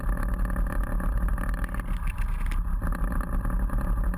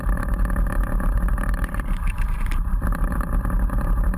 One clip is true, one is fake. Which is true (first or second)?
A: first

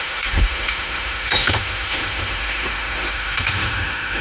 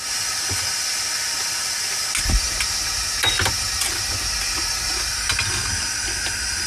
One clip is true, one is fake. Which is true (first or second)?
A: second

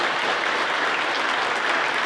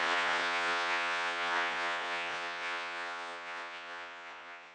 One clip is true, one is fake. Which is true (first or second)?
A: first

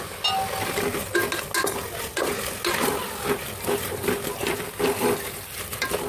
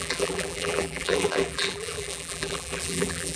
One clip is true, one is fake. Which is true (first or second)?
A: first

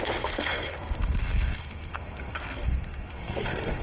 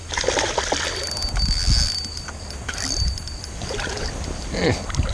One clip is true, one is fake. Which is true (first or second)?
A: second